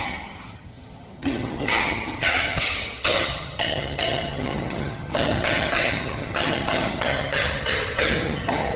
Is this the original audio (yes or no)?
no